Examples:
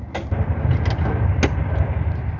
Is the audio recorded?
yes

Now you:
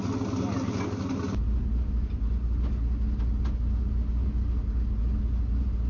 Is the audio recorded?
yes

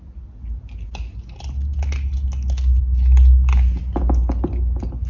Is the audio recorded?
yes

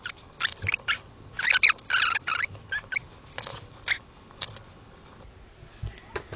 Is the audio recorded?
yes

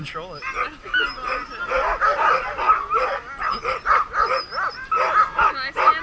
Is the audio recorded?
yes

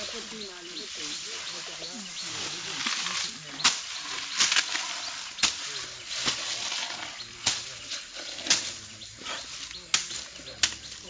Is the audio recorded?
yes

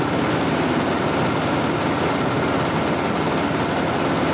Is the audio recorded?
yes